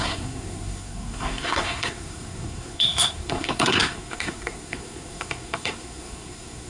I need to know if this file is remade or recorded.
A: remade